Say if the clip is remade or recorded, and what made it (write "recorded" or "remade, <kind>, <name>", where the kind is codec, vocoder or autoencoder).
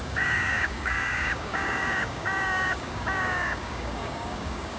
remade, codec, DAC